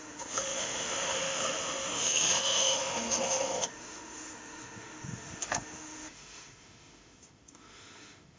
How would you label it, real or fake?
fake